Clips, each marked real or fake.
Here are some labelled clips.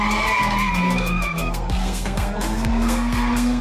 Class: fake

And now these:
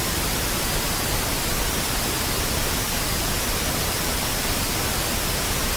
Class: real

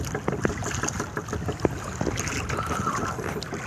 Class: real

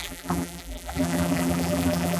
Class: fake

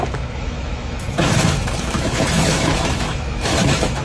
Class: fake